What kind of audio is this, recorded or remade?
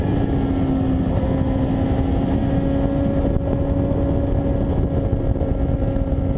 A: recorded